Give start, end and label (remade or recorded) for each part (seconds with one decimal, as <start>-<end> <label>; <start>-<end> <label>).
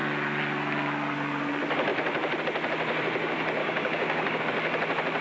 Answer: 0.0-3.6 recorded; 3.6-4.4 remade; 4.4-5.2 recorded